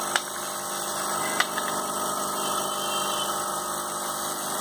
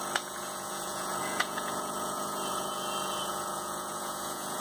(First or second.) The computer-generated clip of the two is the second